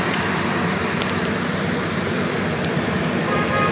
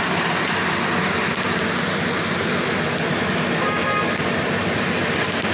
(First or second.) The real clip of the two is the second